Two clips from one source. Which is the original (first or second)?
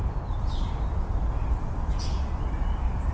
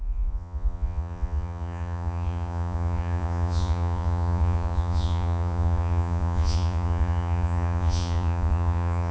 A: first